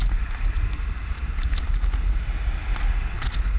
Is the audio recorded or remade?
recorded